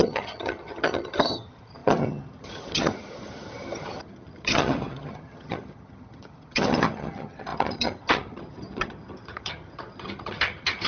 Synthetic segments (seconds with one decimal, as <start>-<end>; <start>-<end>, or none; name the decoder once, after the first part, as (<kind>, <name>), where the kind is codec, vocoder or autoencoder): 0.0-10.9 (vocoder, HiFi-GAN)